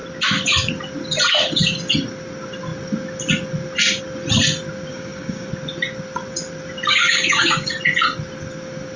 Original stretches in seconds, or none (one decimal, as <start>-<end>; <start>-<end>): 0.0-4.9; 5.5-6.9; 7.7-9.0

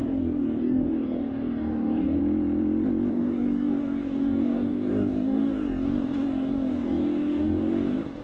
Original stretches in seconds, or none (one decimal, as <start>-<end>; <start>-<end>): 2.2-3.1